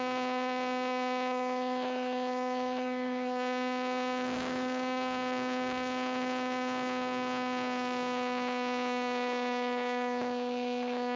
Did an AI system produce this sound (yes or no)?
yes